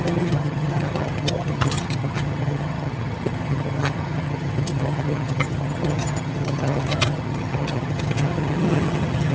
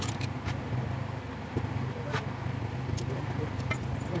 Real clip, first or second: second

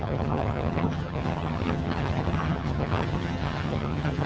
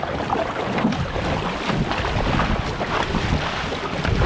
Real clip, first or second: second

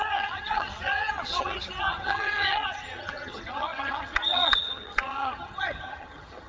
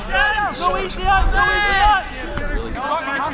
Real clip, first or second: second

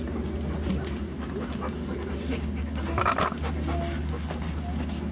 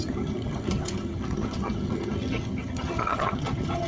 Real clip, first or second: first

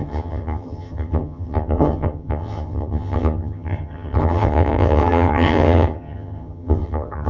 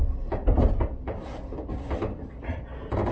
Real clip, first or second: second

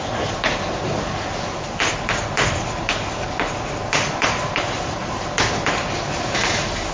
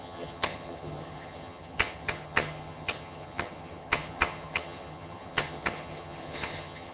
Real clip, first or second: first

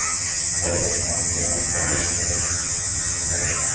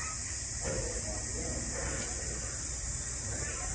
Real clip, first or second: second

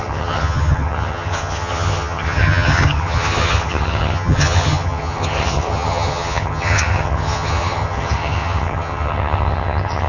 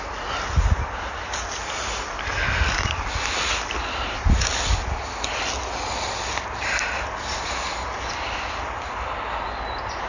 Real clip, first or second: second